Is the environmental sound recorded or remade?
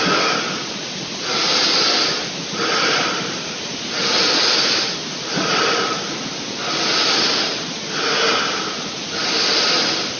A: recorded